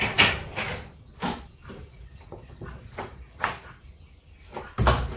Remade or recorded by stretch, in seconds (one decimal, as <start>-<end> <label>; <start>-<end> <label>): 0.0-1.9 recorded; 1.9-3.8 remade; 3.8-5.2 recorded

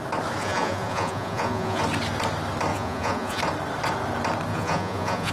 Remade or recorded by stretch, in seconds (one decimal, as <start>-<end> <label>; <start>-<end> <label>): 0.0-0.4 recorded; 0.4-1.8 remade; 1.8-2.7 recorded; 2.7-3.4 remade; 3.4-4.5 recorded; 4.5-5.3 remade